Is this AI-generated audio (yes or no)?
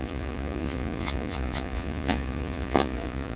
yes